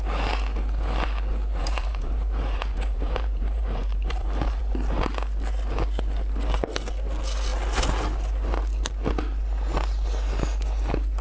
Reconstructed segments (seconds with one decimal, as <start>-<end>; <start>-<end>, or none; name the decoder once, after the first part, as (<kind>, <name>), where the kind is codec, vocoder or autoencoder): 1.6-4.6 (vocoder, BigVGAN v2)